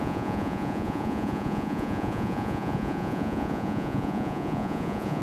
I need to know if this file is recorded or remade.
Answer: remade